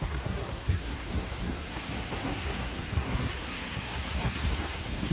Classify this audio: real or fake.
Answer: fake